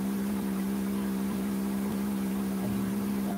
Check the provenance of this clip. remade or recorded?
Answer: remade